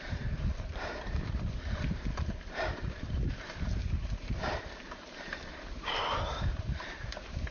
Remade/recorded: remade